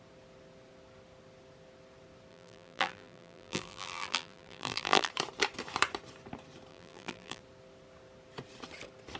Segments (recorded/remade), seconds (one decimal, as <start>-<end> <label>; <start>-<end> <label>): 0.0-2.3 recorded; 2.3-5.1 remade; 5.1-6.7 recorded; 6.7-7.4 remade; 7.4-9.2 recorded